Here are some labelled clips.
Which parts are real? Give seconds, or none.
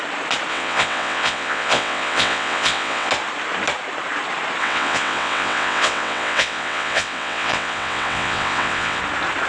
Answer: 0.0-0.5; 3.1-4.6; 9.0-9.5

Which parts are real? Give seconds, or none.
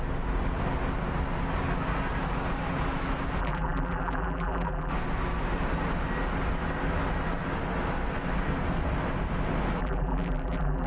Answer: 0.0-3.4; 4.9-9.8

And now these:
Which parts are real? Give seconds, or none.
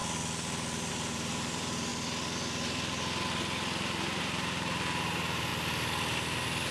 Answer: 0.0-0.9; 1.9-4.2; 5.5-6.7